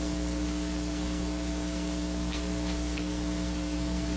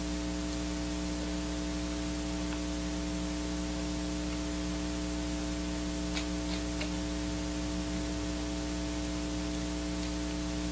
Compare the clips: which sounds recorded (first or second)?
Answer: second